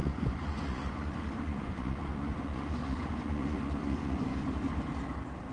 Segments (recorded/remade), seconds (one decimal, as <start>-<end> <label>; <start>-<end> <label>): 0.0-4.3 remade; 4.3-5.5 recorded